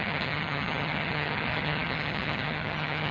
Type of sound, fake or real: fake